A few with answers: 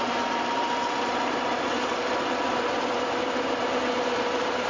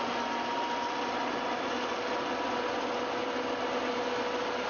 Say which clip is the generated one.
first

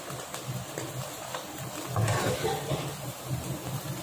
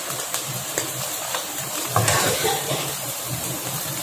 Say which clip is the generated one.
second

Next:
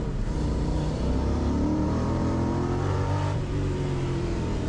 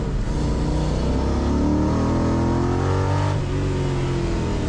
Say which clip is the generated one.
first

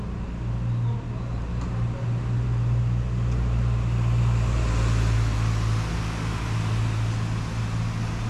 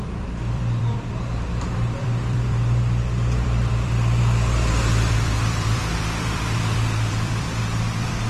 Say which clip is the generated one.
second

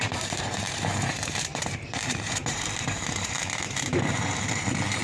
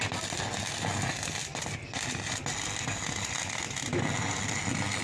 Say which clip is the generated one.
first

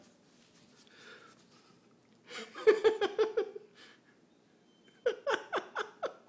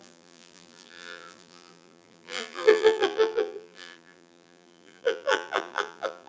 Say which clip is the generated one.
second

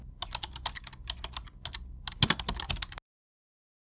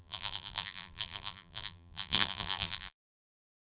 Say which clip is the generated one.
second